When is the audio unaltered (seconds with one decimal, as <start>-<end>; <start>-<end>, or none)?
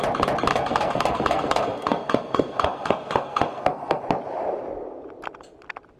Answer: 0.0-0.5; 4.0-6.0